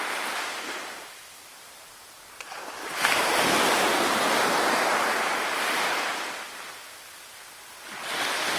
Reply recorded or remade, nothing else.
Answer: recorded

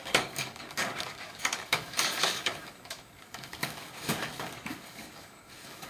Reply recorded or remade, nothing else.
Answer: remade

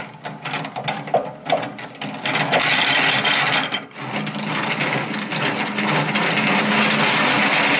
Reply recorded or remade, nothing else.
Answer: recorded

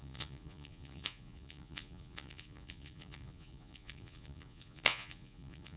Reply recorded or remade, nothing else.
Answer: remade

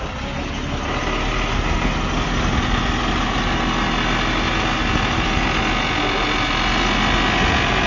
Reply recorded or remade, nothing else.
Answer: recorded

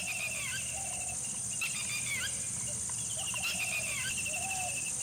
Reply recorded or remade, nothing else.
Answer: recorded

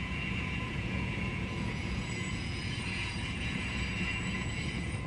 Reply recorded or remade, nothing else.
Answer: remade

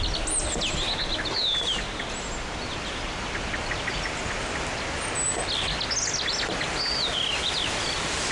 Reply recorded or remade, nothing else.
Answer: recorded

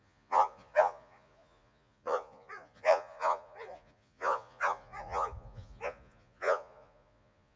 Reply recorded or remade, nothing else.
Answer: remade